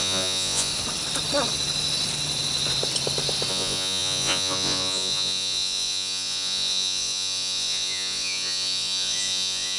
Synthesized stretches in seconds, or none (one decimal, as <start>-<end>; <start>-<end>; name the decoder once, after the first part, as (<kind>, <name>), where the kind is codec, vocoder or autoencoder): 0.0-0.7 (vocoder, Vocos); 3.5-9.8